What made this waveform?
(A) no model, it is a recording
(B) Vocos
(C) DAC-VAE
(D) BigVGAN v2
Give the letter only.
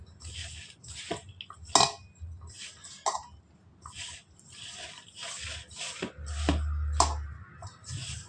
A